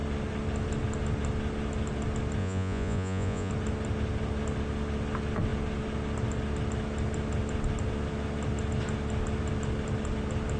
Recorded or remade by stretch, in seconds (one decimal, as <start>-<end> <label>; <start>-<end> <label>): 0.0-2.4 recorded; 2.4-3.5 remade; 3.5-10.6 recorded